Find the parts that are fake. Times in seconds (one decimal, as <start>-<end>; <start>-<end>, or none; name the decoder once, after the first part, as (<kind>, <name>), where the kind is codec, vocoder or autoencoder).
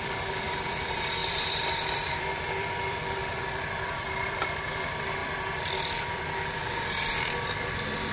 0.0-3.2 (vocoder, BigVGAN v2); 4.1-5.2; 6.1-6.6; 7.5-8.1